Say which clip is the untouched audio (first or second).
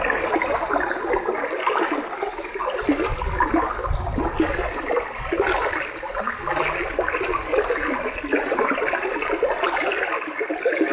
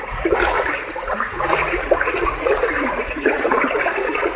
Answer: first